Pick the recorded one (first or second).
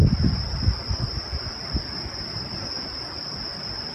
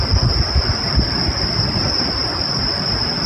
first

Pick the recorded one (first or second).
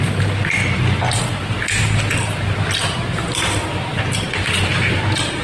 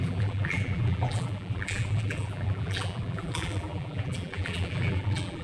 first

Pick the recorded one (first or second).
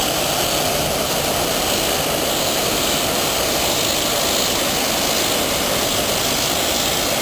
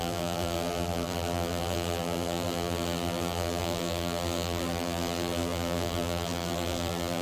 first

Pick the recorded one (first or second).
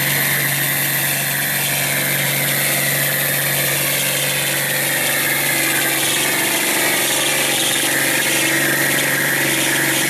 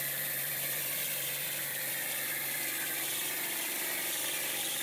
first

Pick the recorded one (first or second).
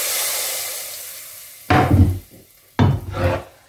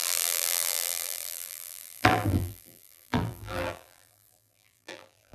first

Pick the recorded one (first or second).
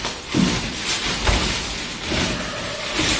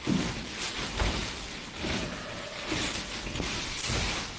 first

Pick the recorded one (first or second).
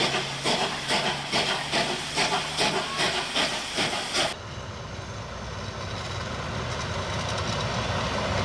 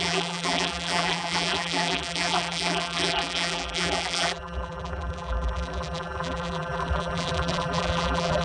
first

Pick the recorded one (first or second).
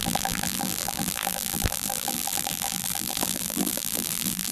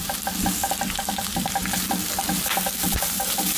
second